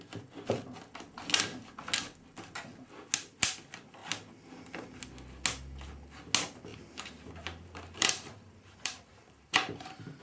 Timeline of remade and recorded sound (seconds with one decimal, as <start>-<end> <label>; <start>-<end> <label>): 0.0-6.7 recorded; 6.7-10.2 remade